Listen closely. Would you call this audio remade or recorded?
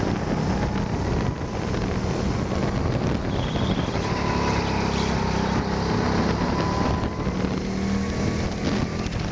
recorded